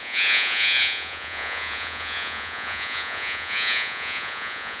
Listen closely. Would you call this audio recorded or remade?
remade